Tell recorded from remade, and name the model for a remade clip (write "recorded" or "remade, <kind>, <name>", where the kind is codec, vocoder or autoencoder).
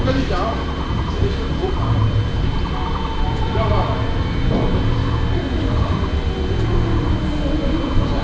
remade, vocoder, BigVGAN v2